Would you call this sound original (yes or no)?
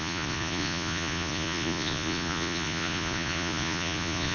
no